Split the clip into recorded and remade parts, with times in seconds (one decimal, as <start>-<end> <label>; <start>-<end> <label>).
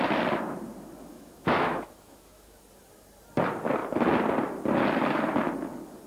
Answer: 0.0-1.1 recorded; 1.1-2.6 remade; 2.6-6.1 recorded